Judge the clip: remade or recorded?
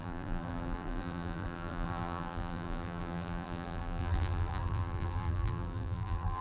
remade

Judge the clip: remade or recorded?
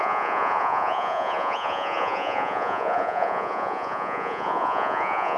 remade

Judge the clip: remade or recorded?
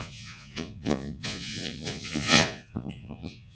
remade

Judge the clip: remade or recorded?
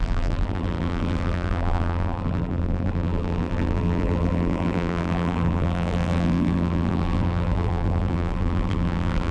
remade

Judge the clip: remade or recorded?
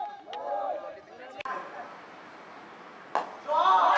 recorded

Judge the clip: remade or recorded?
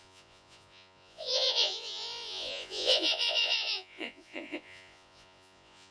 remade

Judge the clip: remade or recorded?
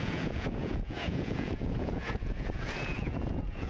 remade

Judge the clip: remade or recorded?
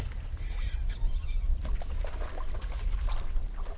recorded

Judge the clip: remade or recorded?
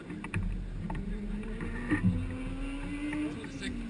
recorded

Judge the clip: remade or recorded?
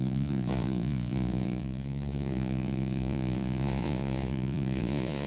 remade